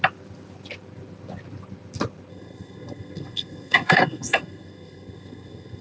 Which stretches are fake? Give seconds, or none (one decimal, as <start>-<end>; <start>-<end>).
2.3-5.8